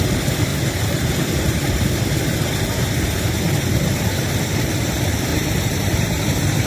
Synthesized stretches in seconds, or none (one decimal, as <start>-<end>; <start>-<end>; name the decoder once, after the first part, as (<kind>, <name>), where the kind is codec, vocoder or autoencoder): 0.5-4.4 (vocoder, BigVGAN v2); 5.3-6.2